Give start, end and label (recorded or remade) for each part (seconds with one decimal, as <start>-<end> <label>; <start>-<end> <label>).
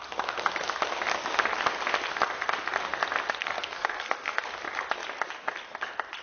0.0-3.4 recorded; 3.4-4.4 remade; 4.4-6.2 recorded